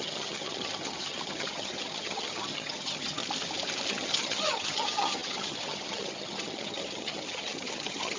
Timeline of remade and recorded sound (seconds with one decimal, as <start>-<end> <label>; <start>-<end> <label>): 0.0-3.2 remade; 3.2-3.9 recorded; 3.9-8.2 remade